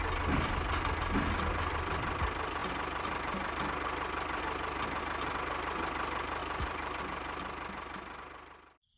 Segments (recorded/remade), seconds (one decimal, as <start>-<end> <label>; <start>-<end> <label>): 0.0-2.6 recorded; 2.6-5.0 remade; 5.0-6.4 recorded; 6.4-7.0 remade; 7.0-9.0 recorded